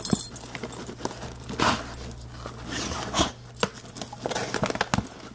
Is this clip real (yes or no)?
yes